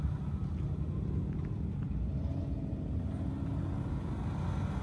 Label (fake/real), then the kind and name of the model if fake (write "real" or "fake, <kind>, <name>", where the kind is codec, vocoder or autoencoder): real